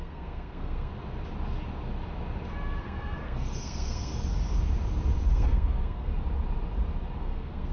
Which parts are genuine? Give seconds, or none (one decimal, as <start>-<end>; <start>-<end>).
0.9-2.8; 4.1-5.3; 6.1-7.2